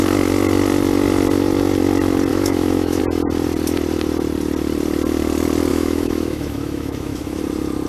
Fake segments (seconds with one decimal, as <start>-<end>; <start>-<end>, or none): 2.3-3.0; 5.7-7.4